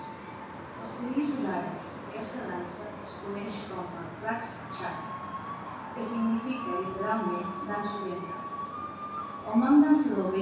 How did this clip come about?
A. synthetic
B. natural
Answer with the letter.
B